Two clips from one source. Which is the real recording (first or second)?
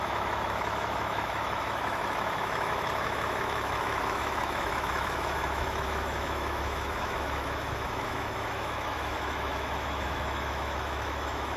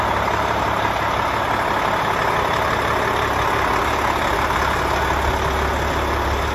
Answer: second